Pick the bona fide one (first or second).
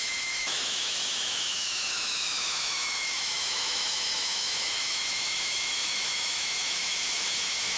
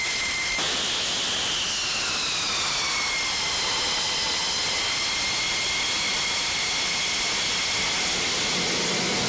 second